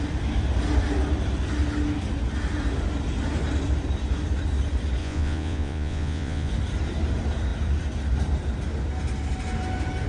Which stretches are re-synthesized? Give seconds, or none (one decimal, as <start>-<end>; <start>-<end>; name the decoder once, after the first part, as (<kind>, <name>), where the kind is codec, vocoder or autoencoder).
5.0-6.5 (vocoder, Vocos)